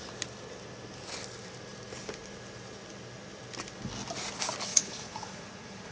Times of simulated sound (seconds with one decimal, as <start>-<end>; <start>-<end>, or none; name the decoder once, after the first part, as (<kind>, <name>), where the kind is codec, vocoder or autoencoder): 4.7-5.9 (vocoder, Vocos)